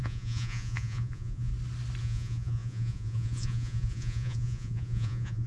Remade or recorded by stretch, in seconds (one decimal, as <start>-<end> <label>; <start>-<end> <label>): 0.0-1.5 remade; 1.5-2.0 recorded; 2.0-5.5 remade